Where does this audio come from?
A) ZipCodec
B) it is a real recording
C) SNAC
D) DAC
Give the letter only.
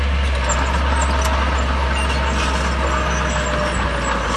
B